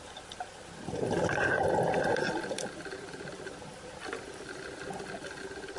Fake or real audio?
real